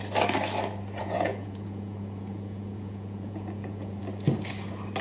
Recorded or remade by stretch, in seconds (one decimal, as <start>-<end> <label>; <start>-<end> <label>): 0.0-1.0 recorded; 1.0-4.0 remade; 4.0-5.0 recorded